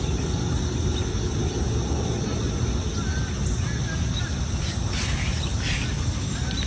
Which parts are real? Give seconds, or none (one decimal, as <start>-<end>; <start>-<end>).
0.0-6.7